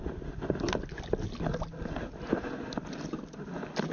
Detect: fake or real real